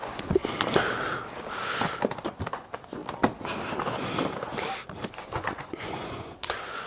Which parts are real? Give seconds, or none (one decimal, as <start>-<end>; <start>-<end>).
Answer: 0.4-2.5; 3.0-5.1